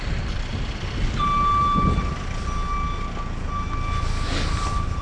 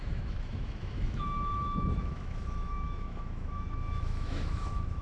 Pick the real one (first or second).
first